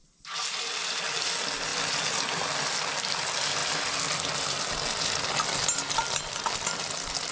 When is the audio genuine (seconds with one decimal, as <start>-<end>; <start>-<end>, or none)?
0.0-7.3